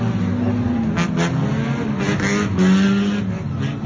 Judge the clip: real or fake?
real